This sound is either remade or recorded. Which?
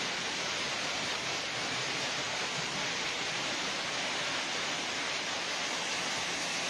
recorded